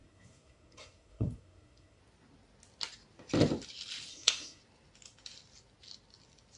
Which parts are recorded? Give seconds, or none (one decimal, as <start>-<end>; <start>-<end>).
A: 2.0-4.1; 4.6-6.6